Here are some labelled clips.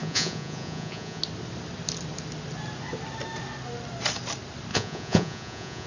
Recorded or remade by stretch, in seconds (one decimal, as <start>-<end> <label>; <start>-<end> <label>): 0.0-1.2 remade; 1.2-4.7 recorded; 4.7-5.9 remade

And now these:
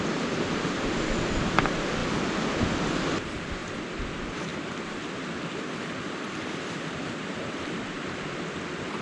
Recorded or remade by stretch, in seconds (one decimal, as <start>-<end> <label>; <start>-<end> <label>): 0.0-9.0 recorded

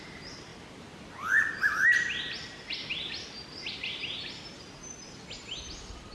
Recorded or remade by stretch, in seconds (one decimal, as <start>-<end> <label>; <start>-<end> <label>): 0.0-6.1 recorded

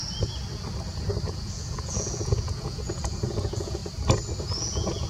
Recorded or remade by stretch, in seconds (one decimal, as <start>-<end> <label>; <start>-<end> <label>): 0.0-1.3 recorded; 1.3-3.8 remade; 3.8-4.4 recorded; 4.4-5.1 remade

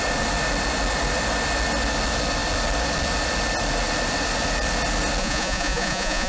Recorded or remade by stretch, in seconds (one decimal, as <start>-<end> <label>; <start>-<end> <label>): 0.0-5.2 recorded; 5.2-6.3 remade

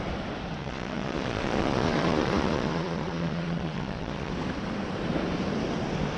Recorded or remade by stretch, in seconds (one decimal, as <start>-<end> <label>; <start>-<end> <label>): 0.0-0.6 recorded; 0.6-4.3 remade; 4.3-6.2 recorded